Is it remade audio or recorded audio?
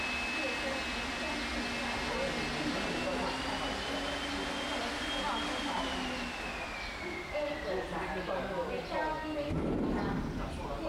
recorded